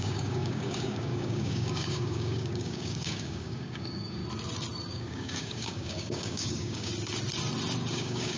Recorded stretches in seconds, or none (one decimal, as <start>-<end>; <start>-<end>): 4.2-4.9; 6.9-7.9